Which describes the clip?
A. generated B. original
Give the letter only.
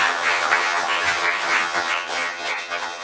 A